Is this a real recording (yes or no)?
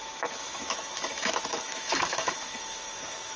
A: no